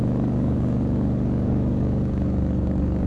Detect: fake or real fake